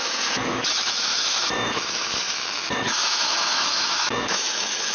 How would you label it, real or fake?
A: fake